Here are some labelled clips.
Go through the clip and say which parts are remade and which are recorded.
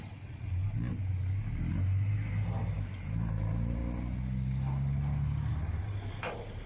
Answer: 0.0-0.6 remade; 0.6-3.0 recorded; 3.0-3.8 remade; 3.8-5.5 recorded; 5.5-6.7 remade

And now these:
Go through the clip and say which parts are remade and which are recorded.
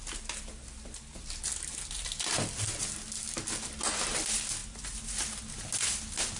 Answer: 0.0-6.4 recorded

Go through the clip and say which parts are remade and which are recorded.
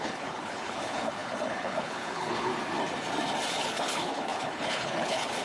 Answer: 0.0-2.5 remade; 2.5-3.5 recorded; 3.5-5.4 remade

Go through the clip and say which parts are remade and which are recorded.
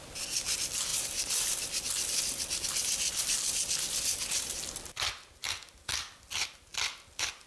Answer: 0.0-7.5 recorded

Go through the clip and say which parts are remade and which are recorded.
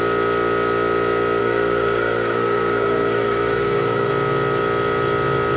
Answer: 0.0-1.4 recorded; 1.4-4.1 remade; 4.1-5.6 recorded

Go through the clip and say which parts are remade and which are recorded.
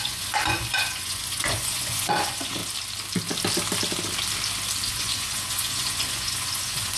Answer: 0.0-2.6 remade; 2.6-4.9 recorded; 4.9-7.0 remade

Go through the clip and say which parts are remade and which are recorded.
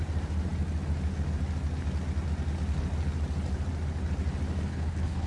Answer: 0.0-4.7 recorded; 4.7-5.3 remade